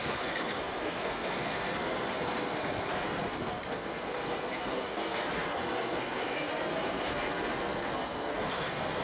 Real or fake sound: fake